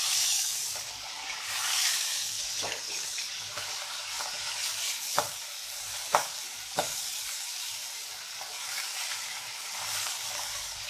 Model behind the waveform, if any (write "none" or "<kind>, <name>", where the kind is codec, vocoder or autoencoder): codec, DAC